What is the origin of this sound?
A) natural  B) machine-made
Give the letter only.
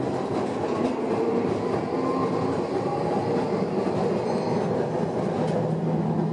A